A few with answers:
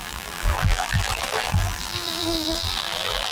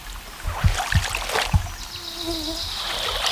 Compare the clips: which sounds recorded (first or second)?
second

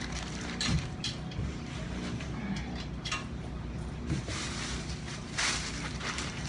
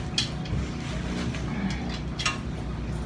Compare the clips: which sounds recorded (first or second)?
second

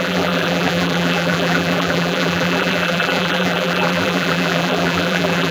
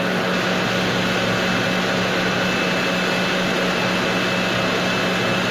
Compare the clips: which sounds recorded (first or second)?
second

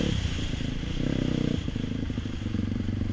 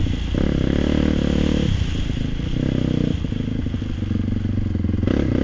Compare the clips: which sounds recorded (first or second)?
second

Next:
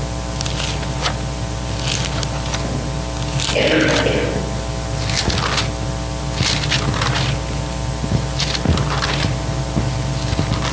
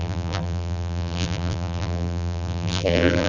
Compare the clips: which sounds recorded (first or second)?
first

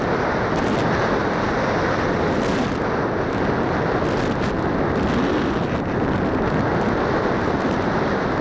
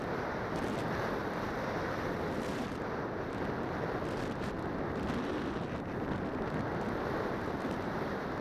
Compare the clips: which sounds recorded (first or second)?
first